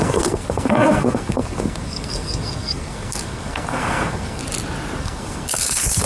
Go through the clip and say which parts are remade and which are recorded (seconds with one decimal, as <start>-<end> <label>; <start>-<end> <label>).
0.0-4.4 remade; 4.4-5.0 recorded; 5.0-6.1 remade